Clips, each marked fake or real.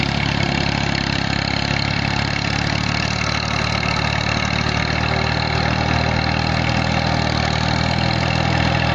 real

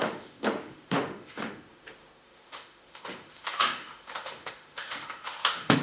fake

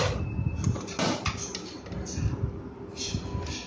real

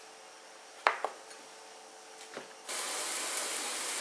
real